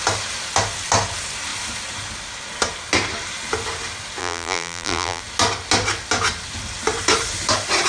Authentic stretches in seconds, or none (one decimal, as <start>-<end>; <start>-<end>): 0.0-4.2; 5.2-7.9